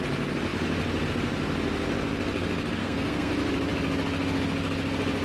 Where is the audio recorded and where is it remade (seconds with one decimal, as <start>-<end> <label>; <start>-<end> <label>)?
0.0-2.8 recorded; 2.8-3.3 remade; 3.3-5.2 recorded